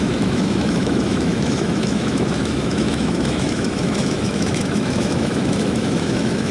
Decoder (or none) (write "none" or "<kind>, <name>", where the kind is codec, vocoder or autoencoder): autoencoder, DAC-VAE